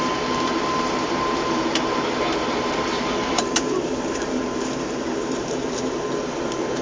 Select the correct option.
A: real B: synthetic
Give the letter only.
B